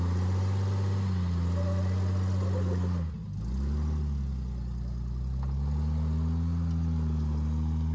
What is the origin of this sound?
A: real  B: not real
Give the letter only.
A